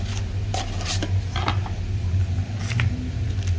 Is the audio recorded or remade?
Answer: recorded